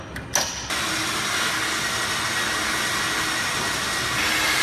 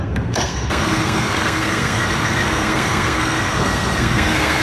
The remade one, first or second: second